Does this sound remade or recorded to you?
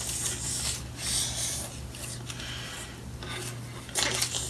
recorded